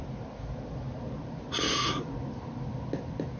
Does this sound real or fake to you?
real